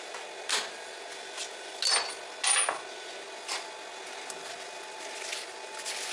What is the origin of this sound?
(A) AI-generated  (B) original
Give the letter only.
B